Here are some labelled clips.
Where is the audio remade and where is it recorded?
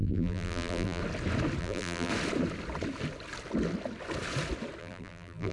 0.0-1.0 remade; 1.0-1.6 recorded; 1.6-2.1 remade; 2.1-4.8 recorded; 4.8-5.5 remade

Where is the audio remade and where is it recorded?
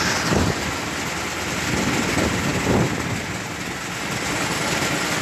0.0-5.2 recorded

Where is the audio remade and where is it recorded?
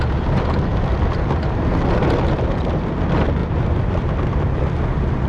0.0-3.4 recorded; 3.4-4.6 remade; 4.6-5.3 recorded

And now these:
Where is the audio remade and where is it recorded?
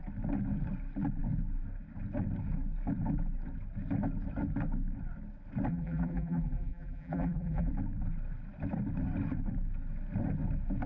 0.0-5.7 recorded; 5.7-7.7 remade; 7.7-10.9 recorded